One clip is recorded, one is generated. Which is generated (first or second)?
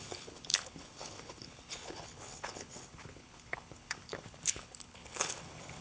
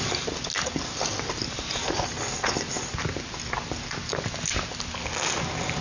first